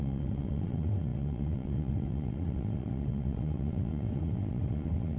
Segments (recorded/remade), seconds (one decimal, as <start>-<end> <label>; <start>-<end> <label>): 0.0-5.2 remade